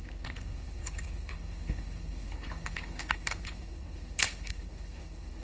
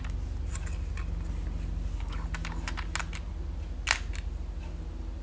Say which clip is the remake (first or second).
first